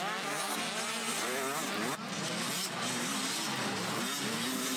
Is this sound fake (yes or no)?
no